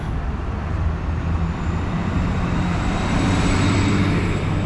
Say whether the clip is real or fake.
fake